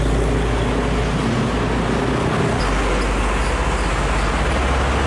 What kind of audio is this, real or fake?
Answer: real